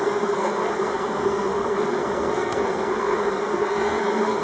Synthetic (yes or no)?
yes